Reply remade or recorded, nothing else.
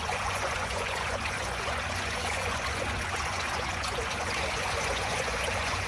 remade